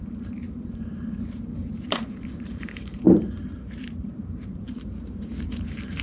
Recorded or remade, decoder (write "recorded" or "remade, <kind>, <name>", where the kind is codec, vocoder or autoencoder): remade, vocoder, BigVGAN v2